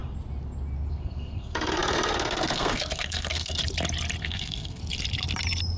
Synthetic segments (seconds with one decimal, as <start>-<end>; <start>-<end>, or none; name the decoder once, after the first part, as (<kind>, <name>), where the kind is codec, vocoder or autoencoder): 0.9-3.6 (codec, SNAC); 4.2-4.8